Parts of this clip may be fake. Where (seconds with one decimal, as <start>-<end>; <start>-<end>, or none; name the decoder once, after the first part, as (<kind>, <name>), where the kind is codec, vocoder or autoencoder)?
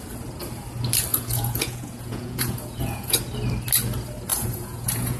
1.1-3.2 (vocoder, Vocos); 4.3-5.2